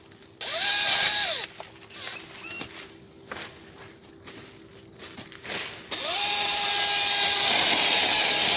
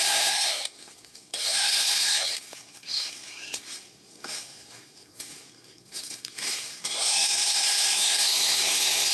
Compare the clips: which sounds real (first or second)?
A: first